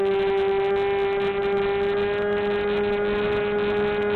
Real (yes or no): yes